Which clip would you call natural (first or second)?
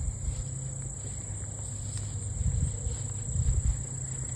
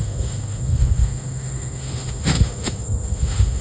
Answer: first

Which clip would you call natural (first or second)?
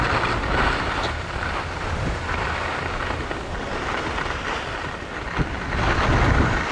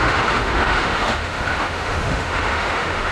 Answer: first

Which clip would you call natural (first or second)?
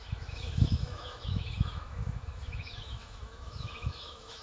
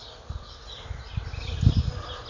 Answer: second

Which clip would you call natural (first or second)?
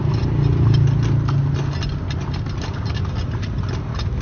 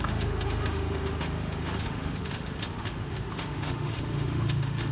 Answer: first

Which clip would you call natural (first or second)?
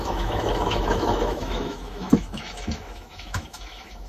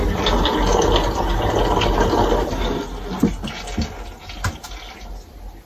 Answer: second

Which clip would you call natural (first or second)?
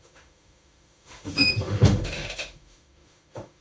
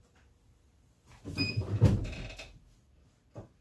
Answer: second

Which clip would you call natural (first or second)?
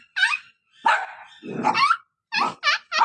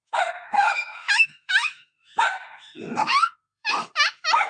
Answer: first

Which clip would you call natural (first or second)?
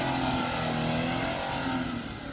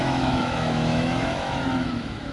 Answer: first